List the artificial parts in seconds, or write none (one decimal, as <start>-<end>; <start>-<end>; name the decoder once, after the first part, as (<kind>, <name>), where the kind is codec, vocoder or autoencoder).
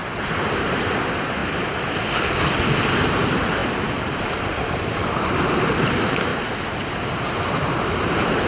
0.5-1.4 (vocoder, BigVGAN v2); 3.1-6.3; 6.9-8.5